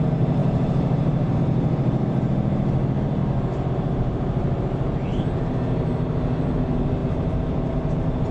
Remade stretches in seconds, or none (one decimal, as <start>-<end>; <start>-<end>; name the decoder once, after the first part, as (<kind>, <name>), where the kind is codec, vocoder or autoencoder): 0.0-3.2 (vocoder, BigVGAN v2); 3.7-5.1; 6.4-8.3

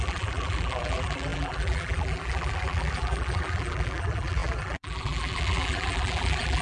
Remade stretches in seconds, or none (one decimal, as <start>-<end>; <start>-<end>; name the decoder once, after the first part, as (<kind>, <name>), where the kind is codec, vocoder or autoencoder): 0.0-6.6 (vocoder, BigVGAN v2)

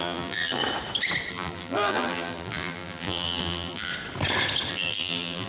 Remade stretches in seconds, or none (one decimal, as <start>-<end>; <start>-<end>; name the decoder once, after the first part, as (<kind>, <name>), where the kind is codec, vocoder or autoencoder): 0.0-0.6 (vocoder, BigVGAN v2); 1.3-3.9; 4.7-5.5